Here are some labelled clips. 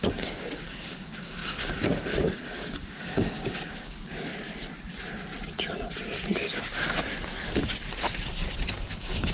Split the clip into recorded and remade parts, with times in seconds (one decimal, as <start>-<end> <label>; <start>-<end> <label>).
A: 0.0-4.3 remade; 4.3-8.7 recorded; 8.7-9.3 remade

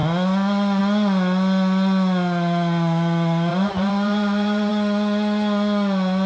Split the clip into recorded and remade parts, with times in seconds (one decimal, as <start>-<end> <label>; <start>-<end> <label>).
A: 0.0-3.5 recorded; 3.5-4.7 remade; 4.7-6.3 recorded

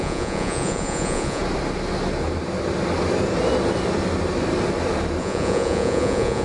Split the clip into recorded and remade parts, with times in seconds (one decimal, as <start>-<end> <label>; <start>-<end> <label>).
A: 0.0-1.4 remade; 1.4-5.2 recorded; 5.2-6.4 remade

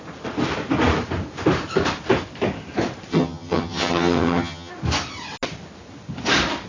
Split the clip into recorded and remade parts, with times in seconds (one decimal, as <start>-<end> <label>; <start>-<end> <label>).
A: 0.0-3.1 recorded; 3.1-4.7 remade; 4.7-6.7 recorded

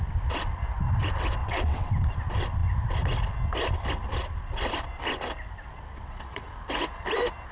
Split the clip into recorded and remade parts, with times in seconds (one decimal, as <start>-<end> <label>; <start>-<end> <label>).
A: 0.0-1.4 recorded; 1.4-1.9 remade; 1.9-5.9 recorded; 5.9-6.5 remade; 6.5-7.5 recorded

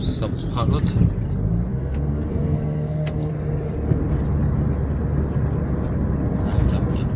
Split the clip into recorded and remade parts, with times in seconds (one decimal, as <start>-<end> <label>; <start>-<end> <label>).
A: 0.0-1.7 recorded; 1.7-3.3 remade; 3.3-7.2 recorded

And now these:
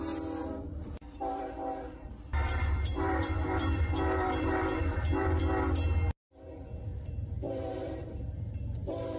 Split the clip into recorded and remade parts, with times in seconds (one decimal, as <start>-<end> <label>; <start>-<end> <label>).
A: 0.0-0.4 recorded; 0.4-5.4 remade; 5.4-6.9 recorded; 6.9-9.2 remade